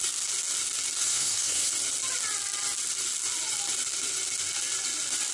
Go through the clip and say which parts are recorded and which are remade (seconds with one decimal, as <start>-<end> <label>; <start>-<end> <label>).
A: 0.0-1.0 recorded; 1.0-1.7 remade; 1.7-5.3 recorded